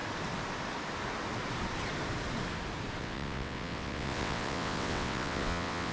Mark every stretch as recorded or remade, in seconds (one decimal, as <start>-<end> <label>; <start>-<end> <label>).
0.0-3.0 recorded; 3.0-5.9 remade